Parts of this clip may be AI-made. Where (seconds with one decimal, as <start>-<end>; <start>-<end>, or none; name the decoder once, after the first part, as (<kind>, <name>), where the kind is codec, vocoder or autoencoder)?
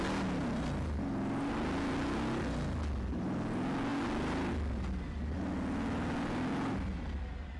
none